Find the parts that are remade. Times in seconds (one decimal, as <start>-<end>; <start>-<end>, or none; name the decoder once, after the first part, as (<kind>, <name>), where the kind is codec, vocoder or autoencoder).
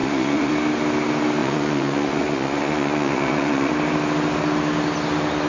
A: 0.0-0.5 (vocoder, Vocos); 1.4-3.7